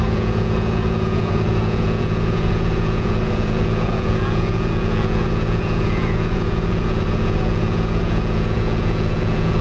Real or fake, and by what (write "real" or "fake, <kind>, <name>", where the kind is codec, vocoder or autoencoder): fake, vocoder, Vocos